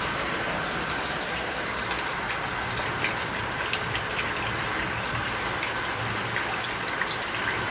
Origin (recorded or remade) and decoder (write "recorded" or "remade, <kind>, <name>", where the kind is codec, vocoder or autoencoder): recorded